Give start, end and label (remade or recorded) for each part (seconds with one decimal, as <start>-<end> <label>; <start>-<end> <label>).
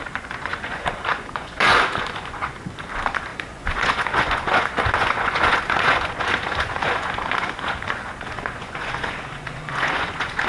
0.0-10.5 remade